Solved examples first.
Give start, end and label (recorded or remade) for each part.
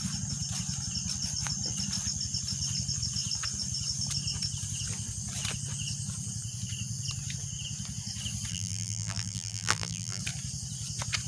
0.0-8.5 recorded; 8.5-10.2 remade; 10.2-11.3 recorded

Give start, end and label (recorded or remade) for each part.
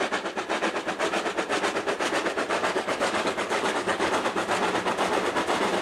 0.0-2.6 recorded; 2.6-4.1 remade; 4.1-5.8 recorded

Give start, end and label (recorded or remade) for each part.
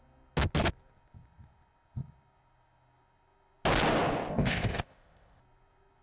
0.0-4.3 recorded; 4.3-5.4 remade; 5.4-6.0 recorded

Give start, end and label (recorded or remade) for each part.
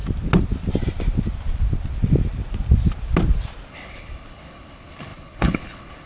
0.0-3.7 recorded; 3.7-6.1 remade